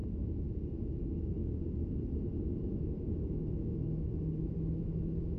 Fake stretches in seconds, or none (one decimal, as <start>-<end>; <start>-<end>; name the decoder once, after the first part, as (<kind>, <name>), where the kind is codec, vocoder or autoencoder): 0.9-1.4 (autoencoder, DAC-VAE); 2.5-5.4